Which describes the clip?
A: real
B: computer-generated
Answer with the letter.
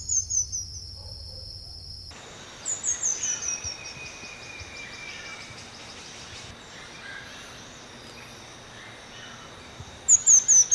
A